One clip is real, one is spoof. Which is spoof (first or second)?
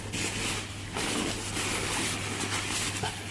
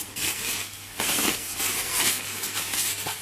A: second